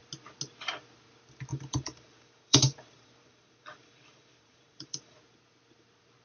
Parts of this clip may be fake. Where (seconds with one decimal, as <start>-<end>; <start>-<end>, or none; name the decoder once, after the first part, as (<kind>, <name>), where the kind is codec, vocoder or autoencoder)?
1.5-5.2 (vocoder, BigVGAN v2)